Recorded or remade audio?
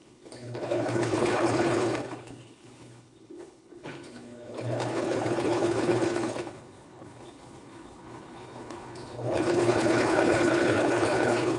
remade